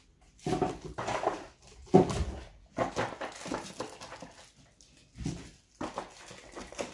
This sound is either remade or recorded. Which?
recorded